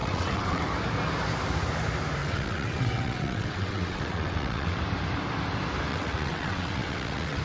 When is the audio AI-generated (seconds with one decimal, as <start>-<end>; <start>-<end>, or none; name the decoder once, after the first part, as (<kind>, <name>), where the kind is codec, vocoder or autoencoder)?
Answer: 0.0-0.6 (vocoder, WaveNeXt); 2.2-4.8; 5.9-7.4